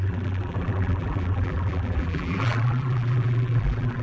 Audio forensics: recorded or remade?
remade